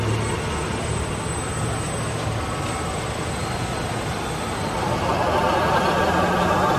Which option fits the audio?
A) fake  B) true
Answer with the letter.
B